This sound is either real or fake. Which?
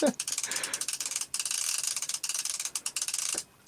real